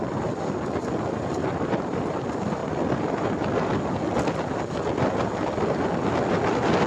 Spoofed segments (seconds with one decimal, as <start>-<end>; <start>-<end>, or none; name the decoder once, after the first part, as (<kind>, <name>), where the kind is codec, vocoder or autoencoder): none